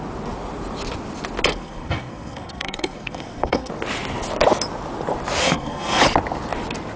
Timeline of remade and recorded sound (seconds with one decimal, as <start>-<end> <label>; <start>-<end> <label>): 0.0-1.5 recorded; 1.5-3.7 remade; 3.7-5.4 recorded; 5.4-6.0 remade; 6.0-7.0 recorded